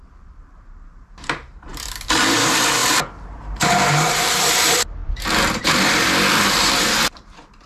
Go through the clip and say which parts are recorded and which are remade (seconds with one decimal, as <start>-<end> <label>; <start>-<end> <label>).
0.0-5.0 remade; 5.0-5.6 recorded; 5.6-7.7 remade